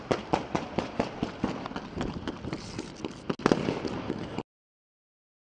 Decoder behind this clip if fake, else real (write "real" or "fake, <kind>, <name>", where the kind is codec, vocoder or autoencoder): real